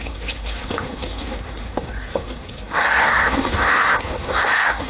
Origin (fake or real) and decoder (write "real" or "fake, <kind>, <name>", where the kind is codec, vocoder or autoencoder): fake, codec, SNAC